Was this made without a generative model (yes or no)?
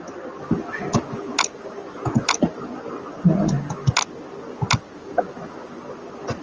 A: yes